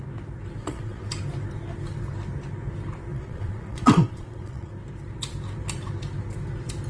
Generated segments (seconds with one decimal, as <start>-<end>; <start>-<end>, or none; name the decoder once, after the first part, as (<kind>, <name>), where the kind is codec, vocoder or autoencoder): 0.6-1.1 (vocoder, WaveNeXt); 3.1-4.7